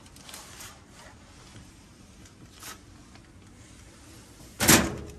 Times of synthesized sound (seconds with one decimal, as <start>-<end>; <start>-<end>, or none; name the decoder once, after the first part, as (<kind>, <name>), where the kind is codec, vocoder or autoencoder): 1.5-2.6 (vocoder, BigVGAN v2)